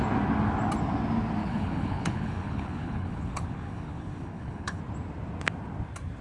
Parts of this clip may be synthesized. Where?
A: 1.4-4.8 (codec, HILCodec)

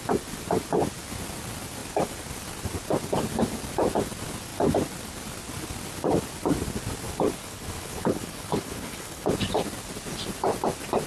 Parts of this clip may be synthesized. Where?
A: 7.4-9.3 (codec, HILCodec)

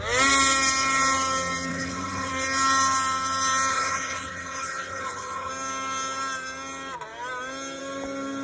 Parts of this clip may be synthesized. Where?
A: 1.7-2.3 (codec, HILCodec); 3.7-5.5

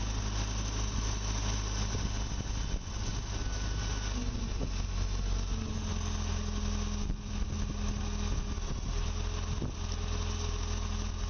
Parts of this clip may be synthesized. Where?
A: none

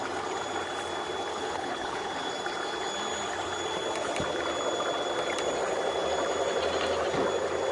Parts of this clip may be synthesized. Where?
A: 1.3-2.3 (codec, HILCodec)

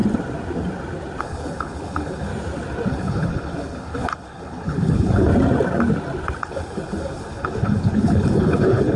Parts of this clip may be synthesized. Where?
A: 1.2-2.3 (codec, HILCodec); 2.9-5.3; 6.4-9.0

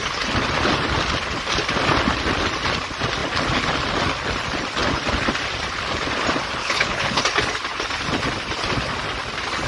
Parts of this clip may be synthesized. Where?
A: 6.6-7.2 (codec, HILCodec)

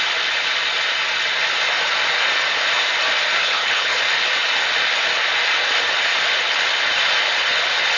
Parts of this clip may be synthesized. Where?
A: 3.4-4.0 (codec, HILCodec)